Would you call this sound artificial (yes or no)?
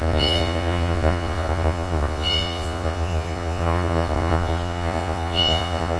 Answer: yes